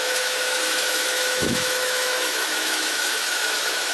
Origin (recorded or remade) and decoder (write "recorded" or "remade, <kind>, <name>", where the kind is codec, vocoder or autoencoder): remade, autoencoder, DAC-VAE